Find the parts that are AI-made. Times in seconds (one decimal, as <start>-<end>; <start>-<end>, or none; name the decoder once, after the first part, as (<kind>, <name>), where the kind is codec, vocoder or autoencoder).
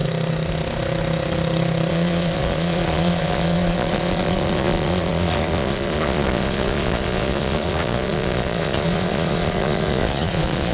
1.9-10.7 (vocoder, Vocos)